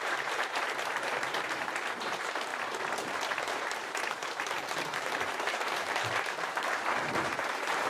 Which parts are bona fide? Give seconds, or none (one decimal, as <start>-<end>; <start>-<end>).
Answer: 2.5-3.5